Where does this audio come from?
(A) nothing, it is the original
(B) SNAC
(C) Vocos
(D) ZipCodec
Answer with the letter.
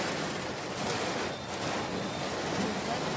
A